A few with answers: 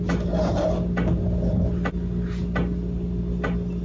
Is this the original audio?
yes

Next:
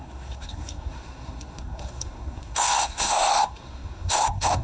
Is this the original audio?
no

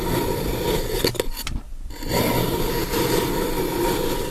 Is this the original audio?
yes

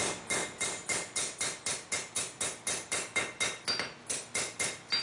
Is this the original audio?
yes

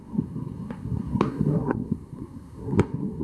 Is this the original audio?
no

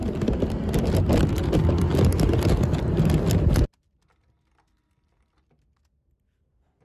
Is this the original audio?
yes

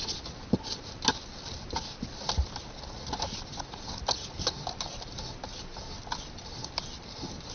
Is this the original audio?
yes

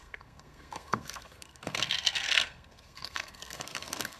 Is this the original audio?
no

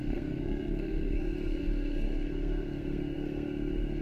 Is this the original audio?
no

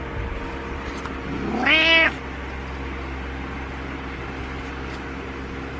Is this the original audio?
yes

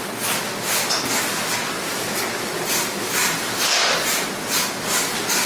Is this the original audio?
yes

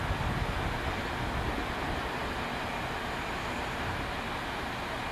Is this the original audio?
yes